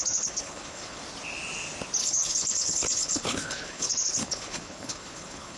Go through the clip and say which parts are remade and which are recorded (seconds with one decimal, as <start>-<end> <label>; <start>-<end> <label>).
0.0-1.0 remade; 1.0-2.0 recorded; 2.0-5.6 remade